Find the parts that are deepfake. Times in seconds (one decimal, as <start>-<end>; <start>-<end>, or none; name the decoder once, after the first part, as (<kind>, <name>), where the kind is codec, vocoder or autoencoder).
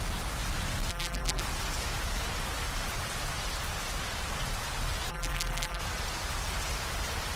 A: 0.9-1.4 (vocoder, BigVGAN v2); 5.1-5.8